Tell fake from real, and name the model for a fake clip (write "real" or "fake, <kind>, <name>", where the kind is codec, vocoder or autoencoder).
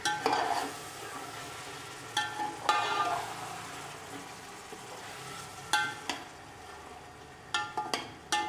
real